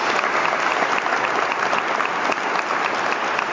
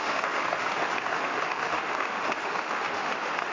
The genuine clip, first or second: first